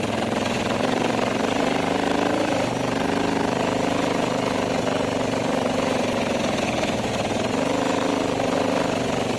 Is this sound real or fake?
real